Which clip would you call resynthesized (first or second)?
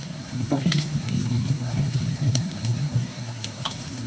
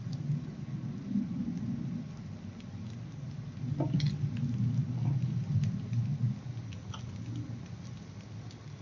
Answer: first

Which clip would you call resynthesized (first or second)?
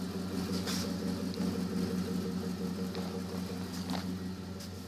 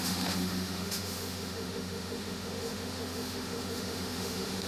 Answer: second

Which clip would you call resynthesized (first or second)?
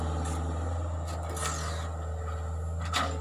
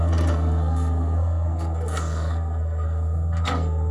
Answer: second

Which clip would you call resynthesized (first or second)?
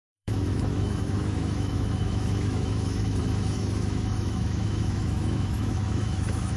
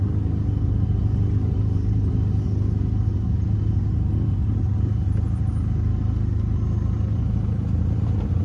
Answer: first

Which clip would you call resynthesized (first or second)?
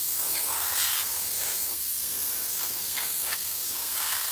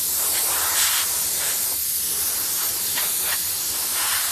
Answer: first